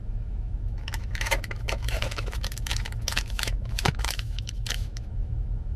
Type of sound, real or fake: fake